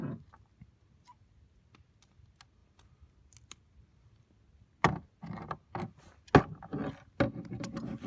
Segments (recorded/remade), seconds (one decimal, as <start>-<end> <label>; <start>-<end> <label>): 0.0-8.1 recorded